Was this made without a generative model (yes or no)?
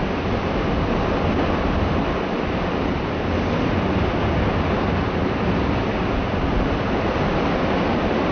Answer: yes